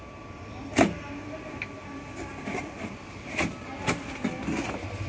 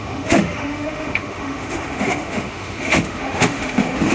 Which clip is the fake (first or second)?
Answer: second